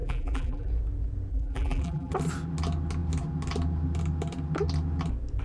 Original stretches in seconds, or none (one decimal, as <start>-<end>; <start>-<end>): 0.7-1.3; 2.1-5.4